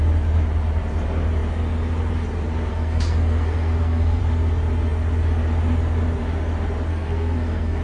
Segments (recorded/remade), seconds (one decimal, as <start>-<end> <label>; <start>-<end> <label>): 0.0-2.7 recorded; 2.7-4.2 remade; 4.2-6.9 recorded; 6.9-7.8 remade